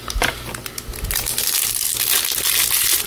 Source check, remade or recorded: recorded